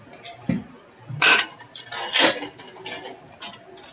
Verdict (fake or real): real